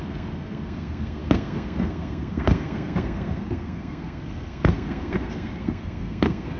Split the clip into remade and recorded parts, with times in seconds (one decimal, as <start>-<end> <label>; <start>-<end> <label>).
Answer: 0.0-6.6 remade